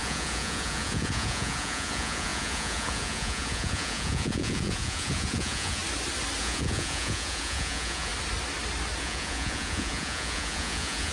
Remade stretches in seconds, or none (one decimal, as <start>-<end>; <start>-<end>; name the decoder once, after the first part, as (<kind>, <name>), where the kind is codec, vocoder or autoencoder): 0.0-5.8 (vocoder, Vocos); 6.4-8.1; 9.0-11.1